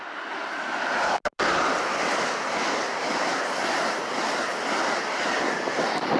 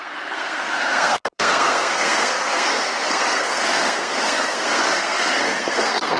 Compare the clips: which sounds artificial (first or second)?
second